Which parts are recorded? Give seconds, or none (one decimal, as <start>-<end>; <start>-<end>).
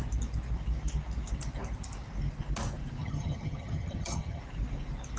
0.0-3.0; 4.4-5.2